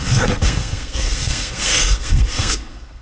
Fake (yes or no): yes